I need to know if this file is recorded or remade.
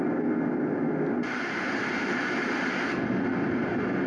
recorded